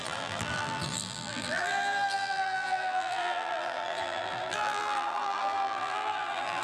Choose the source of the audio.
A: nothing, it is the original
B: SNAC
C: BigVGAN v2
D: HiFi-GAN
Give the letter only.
C